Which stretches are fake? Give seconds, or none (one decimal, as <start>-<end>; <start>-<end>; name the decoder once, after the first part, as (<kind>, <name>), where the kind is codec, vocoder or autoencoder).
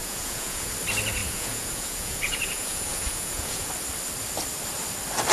0.0-0.7 (vocoder, Vocos); 1.2-3.7